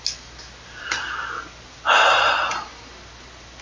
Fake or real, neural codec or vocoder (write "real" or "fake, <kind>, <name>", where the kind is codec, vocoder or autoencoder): real